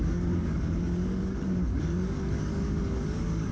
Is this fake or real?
fake